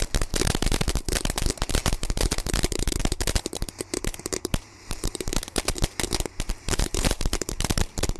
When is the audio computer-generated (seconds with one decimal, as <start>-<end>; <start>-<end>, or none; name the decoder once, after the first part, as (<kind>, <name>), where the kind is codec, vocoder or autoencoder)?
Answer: 0.0-5.8 (vocoder, BigVGAN v2); 6.5-8.2